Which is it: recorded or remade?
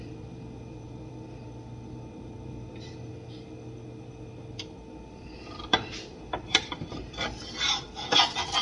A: remade